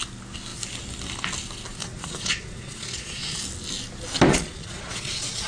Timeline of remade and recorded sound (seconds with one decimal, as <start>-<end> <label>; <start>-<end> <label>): 0.0-1.8 recorded; 1.8-3.4 remade; 3.4-4.3 recorded; 4.3-5.5 remade